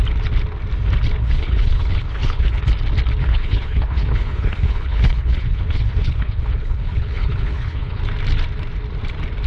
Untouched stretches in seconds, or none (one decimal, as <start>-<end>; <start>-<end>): 0.0-1.2; 2.6-3.2; 8.0-9.5